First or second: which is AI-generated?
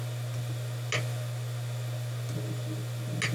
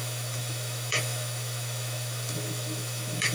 second